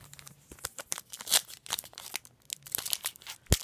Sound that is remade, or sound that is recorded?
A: recorded